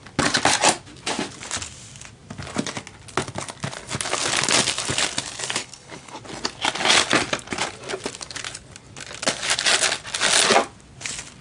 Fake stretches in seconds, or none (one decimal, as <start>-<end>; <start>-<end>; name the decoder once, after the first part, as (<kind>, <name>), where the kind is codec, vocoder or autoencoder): 5.6-6.2 (codec, HILCodec)